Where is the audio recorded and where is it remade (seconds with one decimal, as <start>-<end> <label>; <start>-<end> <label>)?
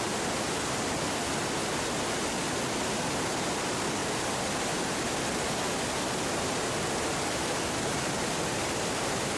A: 0.0-9.4 recorded